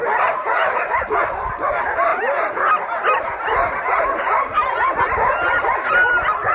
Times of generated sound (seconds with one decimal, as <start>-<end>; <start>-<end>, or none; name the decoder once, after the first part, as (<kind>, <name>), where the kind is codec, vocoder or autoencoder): none